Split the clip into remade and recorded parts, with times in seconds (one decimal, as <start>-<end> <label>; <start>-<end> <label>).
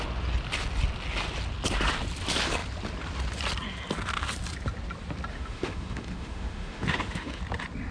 0.0-5.3 recorded; 5.3-7.4 remade; 7.4-7.9 recorded